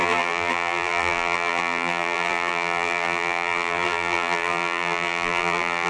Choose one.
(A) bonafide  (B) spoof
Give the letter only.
B